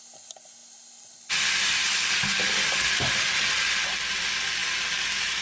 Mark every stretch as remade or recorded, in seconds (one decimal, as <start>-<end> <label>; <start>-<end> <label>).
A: 0.0-5.4 recorded